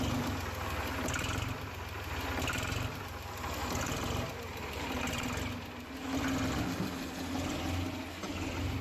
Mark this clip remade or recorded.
recorded